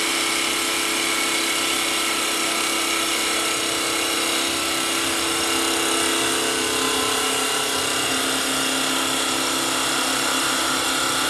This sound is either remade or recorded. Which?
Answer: recorded